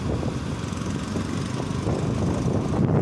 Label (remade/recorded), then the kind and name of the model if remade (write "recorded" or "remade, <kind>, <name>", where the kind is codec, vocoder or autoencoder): recorded